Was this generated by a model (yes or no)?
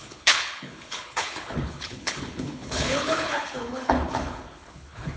yes